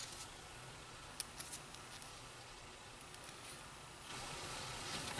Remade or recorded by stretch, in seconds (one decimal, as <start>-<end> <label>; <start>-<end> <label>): 0.0-1.1 remade; 1.1-2.1 recorded; 2.1-3.0 remade; 3.0-4.1 recorded; 4.1-5.2 remade